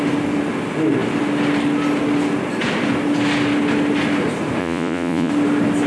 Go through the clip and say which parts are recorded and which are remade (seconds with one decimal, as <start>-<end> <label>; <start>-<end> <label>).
0.0-4.6 recorded; 4.6-5.3 remade; 5.3-5.9 recorded